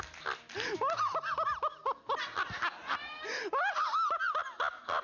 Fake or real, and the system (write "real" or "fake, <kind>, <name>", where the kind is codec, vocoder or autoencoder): real